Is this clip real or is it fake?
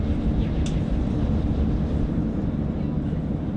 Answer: real